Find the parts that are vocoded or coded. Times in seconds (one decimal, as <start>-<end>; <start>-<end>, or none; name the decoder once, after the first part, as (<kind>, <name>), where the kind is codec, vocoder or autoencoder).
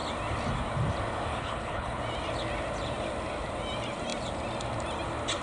1.3-2.0 (codec, HILCodec)